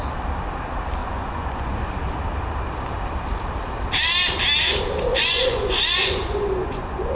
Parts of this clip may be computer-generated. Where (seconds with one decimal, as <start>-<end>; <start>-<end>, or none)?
1.0-1.7; 5.1-7.1